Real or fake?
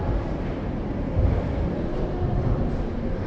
real